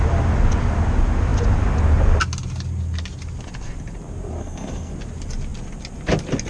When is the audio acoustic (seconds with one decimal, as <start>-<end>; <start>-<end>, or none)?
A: 0.0-4.4; 4.9-6.5